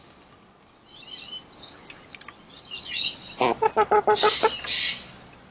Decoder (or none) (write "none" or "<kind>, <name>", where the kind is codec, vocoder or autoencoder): none